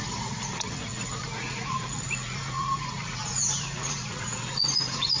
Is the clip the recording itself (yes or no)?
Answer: no